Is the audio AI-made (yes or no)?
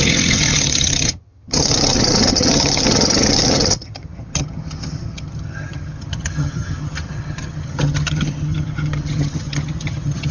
yes